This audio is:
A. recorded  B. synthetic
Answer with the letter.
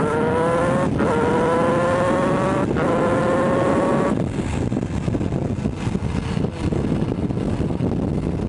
A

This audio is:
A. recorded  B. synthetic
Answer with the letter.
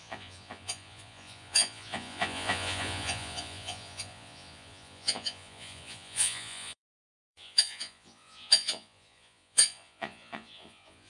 B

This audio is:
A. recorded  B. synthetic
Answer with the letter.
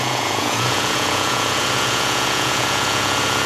B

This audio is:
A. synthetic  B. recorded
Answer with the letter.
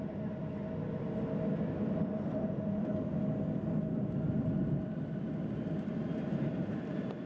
B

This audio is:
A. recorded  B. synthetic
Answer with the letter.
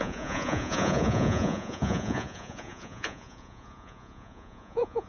B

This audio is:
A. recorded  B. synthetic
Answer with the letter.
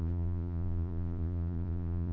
B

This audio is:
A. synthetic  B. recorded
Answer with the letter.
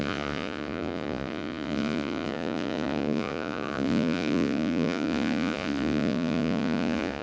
A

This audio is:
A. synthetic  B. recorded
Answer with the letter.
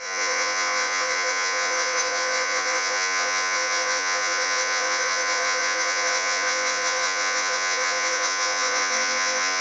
A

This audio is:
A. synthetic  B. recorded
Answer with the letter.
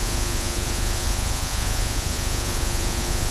A